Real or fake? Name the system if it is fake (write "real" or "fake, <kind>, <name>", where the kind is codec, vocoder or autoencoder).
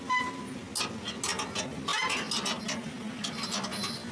real